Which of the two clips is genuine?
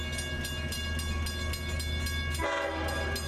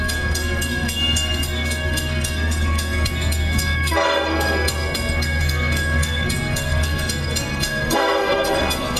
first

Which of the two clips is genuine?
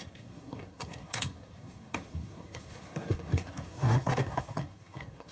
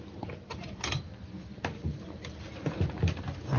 second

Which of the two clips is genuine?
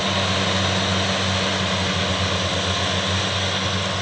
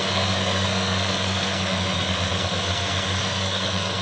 first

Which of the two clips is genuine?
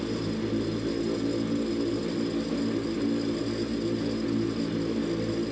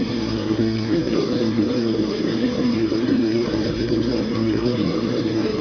first